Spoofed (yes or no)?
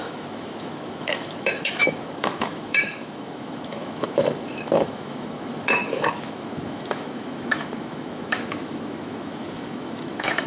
yes